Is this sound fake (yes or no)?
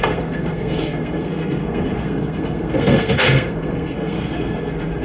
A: yes